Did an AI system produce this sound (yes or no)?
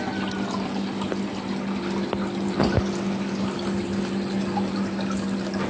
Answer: no